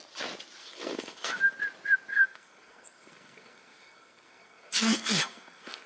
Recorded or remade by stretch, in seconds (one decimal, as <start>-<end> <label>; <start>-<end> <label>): 0.0-0.6 recorded; 0.6-1.4 remade; 1.4-2.1 recorded; 2.1-5.9 remade